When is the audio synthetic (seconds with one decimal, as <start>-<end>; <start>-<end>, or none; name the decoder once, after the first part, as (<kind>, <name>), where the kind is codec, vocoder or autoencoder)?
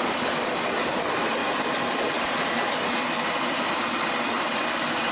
none